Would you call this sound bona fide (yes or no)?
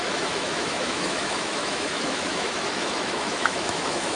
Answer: no